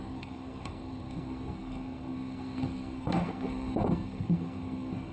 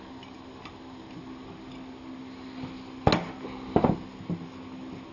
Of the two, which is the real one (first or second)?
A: second